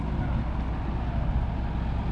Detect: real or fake real